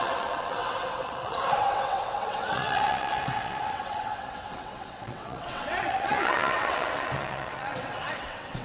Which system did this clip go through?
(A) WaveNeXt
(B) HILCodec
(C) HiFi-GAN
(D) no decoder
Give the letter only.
A